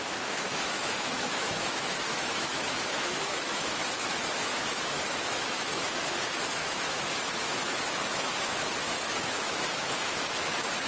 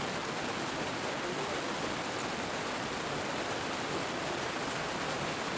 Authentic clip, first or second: second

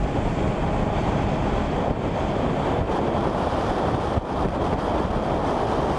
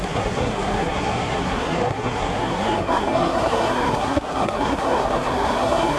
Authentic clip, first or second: first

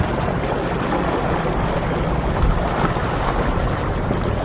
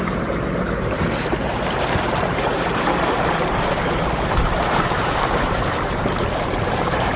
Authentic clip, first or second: first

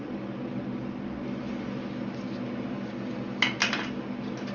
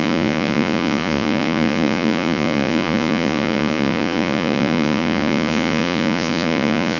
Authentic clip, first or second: first